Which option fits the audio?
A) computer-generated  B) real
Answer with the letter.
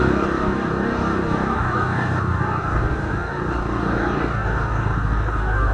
A